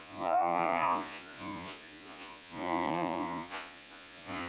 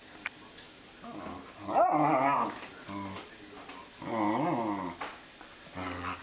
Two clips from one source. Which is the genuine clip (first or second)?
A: second